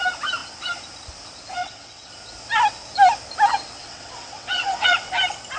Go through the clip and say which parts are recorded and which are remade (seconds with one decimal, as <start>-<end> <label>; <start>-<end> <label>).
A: 0.0-1.6 recorded; 1.6-2.1 remade; 2.1-3.8 recorded; 3.8-5.1 remade; 5.1-5.6 recorded